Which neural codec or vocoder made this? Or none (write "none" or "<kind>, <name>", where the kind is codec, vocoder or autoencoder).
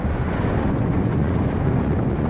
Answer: vocoder, Vocos